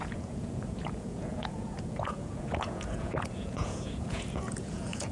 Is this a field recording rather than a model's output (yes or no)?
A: no